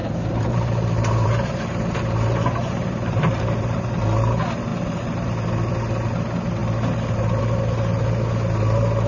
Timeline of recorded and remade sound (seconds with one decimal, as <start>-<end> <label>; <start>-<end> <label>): 0.0-4.0 remade; 4.0-9.1 recorded